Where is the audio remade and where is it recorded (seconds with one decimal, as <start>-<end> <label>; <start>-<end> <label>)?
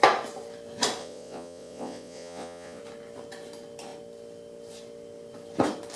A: 0.0-1.0 recorded; 1.0-2.8 remade; 2.8-6.0 recorded